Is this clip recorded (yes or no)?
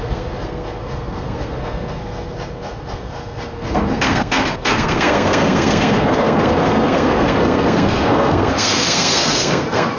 no